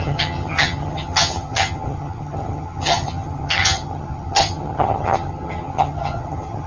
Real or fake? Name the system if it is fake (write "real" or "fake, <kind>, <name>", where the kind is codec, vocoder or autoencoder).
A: fake, vocoder, HiFi-GAN